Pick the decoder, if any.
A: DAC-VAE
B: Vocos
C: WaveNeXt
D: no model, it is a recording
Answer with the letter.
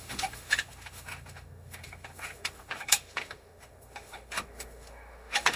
A